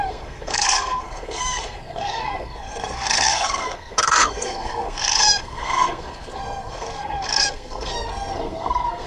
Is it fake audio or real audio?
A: fake